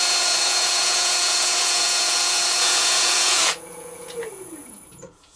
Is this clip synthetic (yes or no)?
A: yes